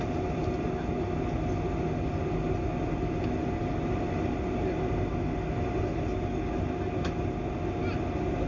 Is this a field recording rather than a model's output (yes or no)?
yes